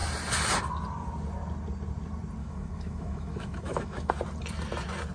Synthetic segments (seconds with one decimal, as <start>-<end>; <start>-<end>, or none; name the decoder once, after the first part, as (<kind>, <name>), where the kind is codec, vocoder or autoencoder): 2.4-4.1 (autoencoder, DAC-VAE)